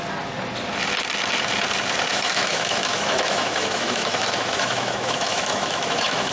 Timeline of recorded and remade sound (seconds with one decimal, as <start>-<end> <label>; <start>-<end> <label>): 0.0-2.1 recorded; 2.1-6.3 remade